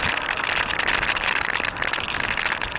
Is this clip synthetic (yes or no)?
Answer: no